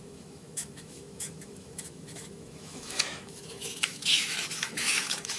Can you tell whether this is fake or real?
fake